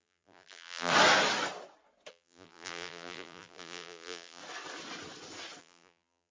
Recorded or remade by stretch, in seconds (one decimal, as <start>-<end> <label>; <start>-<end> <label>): 0.0-0.9 remade; 0.9-2.1 recorded; 2.1-4.4 remade; 4.4-5.6 recorded; 5.6-6.3 remade